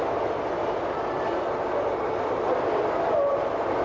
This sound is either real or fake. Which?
real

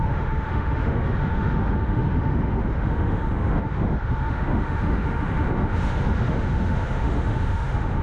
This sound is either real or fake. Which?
fake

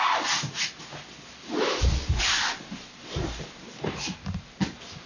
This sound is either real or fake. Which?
real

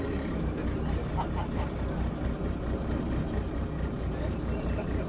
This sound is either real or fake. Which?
real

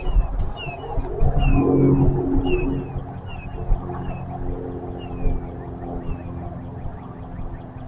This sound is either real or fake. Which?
real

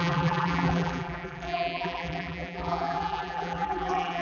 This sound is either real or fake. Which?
fake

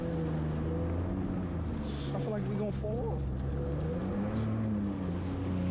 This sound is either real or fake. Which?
real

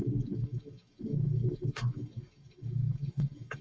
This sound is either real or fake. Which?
fake